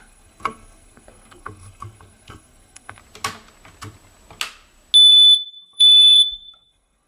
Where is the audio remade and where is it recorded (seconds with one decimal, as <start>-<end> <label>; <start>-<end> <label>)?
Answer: 0.0-3.0 remade; 3.0-5.1 recorded; 5.1-7.1 remade